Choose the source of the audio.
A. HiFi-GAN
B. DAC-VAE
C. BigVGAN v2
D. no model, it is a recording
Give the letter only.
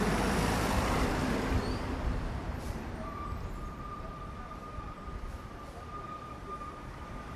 C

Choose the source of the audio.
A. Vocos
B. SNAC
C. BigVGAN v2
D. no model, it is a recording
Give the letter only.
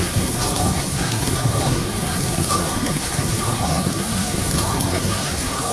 B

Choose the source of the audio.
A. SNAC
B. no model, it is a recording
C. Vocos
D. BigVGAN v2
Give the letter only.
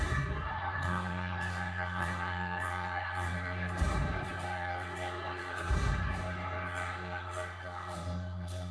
A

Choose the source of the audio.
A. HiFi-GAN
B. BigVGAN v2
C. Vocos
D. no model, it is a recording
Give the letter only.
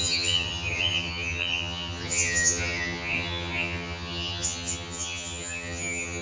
A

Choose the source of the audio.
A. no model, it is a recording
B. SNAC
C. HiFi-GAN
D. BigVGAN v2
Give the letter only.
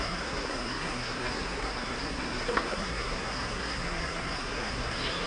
B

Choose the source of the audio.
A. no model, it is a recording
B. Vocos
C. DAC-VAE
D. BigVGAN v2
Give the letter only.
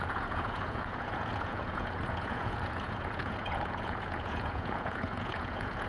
B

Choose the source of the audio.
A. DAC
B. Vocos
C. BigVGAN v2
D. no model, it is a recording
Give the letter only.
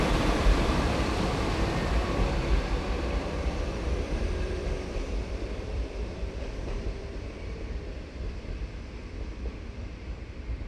C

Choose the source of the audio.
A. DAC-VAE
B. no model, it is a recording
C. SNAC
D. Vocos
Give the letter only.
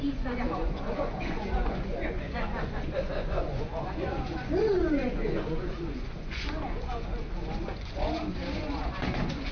D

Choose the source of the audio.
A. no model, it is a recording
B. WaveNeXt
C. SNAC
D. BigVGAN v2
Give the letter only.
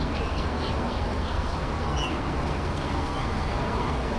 C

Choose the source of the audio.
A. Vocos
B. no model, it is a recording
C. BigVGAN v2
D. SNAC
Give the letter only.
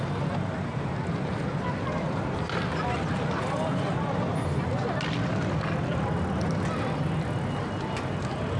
B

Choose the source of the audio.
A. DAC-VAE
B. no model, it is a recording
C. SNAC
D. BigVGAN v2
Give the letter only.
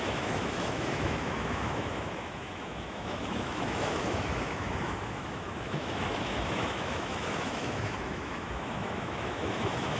A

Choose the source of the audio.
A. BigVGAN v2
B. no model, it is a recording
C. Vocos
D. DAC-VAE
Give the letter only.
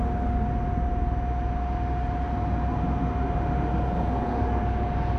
B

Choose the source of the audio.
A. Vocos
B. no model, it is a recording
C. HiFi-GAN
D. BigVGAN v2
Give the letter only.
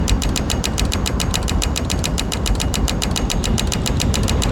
D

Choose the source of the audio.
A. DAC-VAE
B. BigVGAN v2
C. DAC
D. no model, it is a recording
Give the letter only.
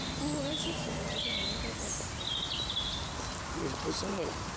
D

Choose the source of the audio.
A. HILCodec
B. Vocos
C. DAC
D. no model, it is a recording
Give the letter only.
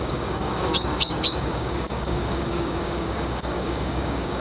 C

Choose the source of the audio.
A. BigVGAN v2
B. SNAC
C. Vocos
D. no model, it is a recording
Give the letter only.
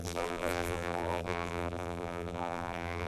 A